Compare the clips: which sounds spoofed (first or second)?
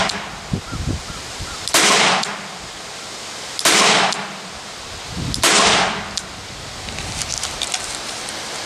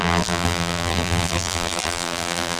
second